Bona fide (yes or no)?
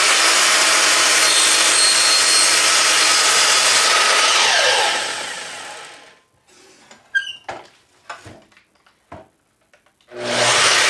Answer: yes